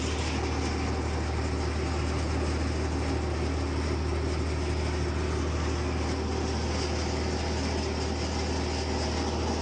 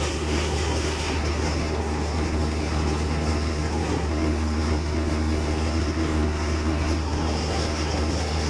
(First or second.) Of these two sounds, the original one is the first